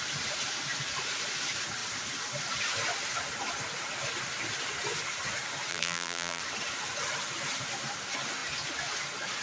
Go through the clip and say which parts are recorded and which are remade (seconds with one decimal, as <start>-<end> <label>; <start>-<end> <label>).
0.0-5.7 recorded; 5.7-6.4 remade; 6.4-9.4 recorded